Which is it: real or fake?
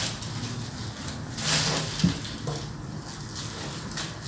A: real